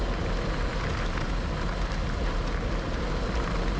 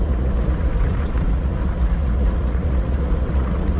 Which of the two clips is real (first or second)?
first